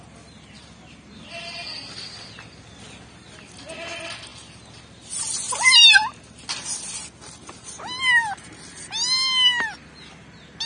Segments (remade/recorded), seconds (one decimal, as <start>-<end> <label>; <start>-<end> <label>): 0.0-10.7 recorded